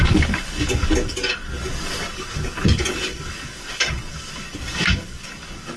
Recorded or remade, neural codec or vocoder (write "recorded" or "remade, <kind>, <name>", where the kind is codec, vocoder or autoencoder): remade, codec, DAC